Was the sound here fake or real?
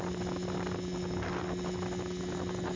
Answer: real